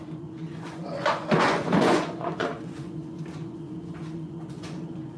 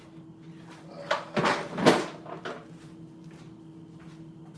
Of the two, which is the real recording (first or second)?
second